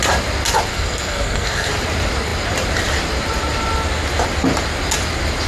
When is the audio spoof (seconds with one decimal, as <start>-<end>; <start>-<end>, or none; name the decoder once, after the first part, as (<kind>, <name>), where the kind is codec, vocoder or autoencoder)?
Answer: 0.7-1.7 (codec, SNAC)